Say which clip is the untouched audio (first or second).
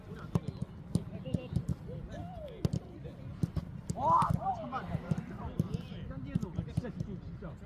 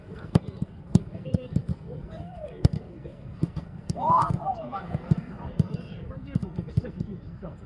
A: first